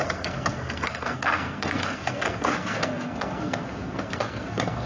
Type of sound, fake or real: fake